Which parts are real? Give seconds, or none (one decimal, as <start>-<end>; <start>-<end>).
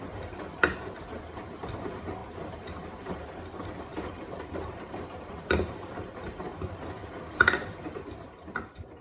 0.0-2.2; 3.4-3.9; 4.9-6.5; 7.0-9.0